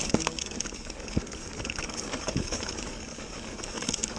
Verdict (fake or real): fake